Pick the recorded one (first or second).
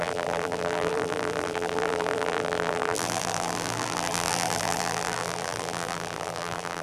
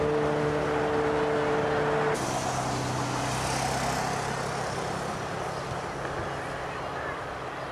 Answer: second